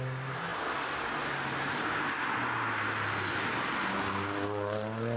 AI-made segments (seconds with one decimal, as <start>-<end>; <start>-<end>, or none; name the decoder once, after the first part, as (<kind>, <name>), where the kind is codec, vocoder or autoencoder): none